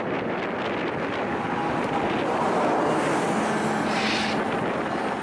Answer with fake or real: real